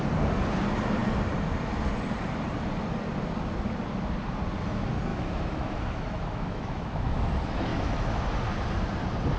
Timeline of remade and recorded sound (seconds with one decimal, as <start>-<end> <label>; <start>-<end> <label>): 0.0-5.1 recorded; 5.1-7.3 remade; 7.3-7.7 recorded; 7.7-8.2 remade; 8.2-9.4 recorded